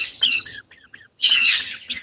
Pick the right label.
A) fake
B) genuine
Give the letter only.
A